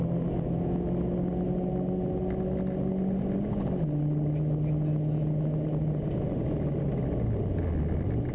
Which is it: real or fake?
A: real